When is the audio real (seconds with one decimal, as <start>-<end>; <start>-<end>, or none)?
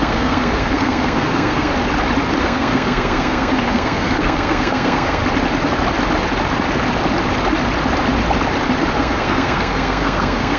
1.7-2.4; 5.2-9.0